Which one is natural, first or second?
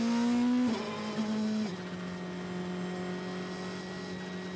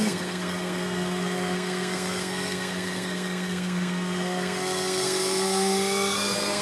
first